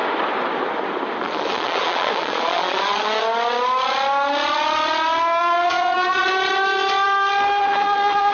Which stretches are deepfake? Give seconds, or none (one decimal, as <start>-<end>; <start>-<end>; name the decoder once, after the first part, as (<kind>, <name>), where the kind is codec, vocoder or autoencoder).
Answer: 1.3-3.2 (vocoder, Vocos); 5.4-6.3; 7.6-8.3